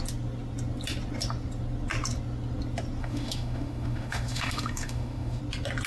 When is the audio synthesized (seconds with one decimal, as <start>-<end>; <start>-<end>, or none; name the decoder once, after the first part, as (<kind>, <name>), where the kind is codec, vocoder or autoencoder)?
3.0-5.4 (autoencoder, DAC-VAE)